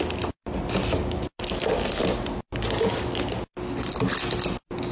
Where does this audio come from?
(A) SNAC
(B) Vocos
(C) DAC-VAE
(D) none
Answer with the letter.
D